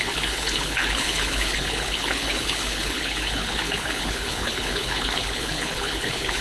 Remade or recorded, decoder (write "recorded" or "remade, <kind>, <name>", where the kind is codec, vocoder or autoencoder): remade, codec, HILCodec